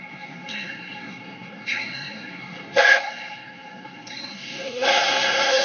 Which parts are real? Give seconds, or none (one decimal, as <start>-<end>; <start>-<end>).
none